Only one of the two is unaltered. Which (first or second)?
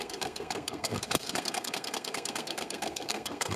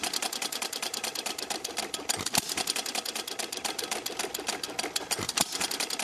second